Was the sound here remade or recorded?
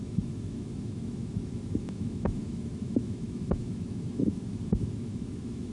remade